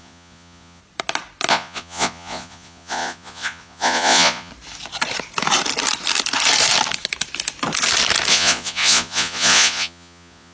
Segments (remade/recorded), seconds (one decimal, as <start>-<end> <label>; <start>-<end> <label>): 0.0-0.8 remade; 0.8-1.5 recorded; 1.5-4.5 remade; 4.5-8.3 recorded; 8.3-10.5 remade